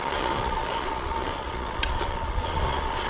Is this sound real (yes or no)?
no